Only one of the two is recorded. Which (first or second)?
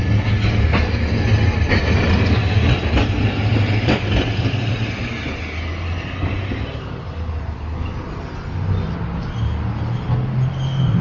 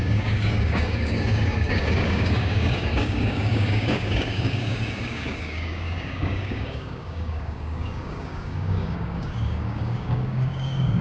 first